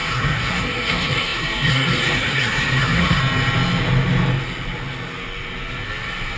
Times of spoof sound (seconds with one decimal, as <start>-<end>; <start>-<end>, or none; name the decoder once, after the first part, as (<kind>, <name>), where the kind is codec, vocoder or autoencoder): 0.0-3.2 (codec, SNAC)